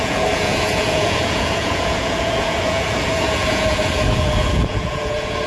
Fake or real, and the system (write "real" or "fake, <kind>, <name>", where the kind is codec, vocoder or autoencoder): fake, vocoder, Vocos